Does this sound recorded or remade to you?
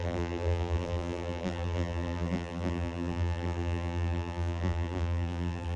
remade